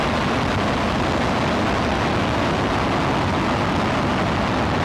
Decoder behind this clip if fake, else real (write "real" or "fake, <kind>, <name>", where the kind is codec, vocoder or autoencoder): real